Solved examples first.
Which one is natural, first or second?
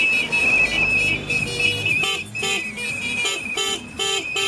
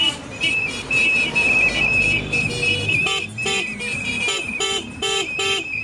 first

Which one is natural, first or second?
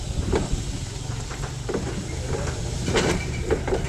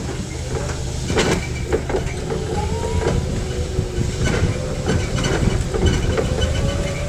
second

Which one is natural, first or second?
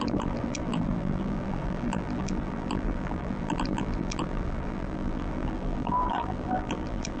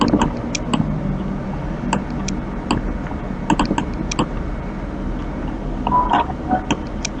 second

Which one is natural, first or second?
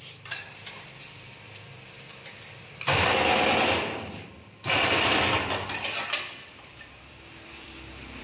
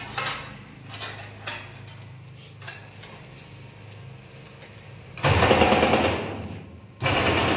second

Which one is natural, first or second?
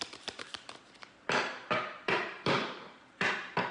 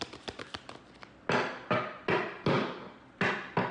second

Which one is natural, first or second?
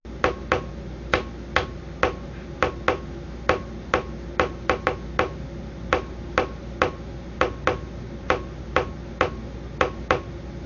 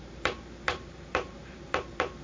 first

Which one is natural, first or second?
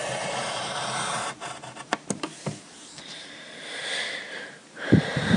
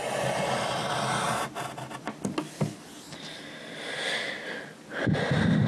second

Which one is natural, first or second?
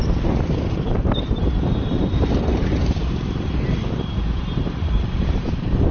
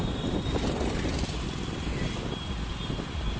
second